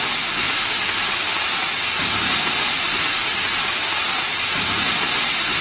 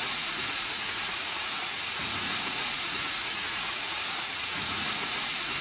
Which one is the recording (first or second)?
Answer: first